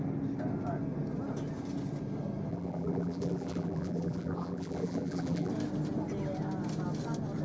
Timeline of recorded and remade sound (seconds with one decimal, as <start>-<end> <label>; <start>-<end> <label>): 0.0-2.5 recorded; 2.5-5.5 remade; 5.5-7.4 recorded